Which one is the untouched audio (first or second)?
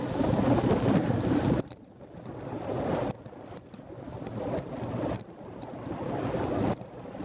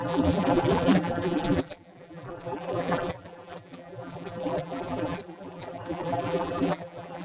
first